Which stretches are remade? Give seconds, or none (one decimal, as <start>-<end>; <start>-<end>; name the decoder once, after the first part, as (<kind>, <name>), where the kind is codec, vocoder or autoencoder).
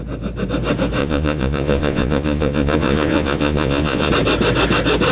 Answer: 1.0-4.1 (vocoder, Vocos)